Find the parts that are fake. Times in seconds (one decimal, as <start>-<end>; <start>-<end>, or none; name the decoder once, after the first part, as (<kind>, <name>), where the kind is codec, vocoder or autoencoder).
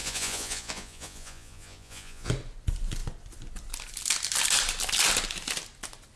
0.0-2.3 (vocoder, Vocos)